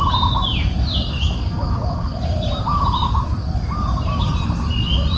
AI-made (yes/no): no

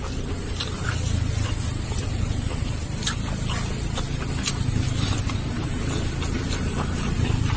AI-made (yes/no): no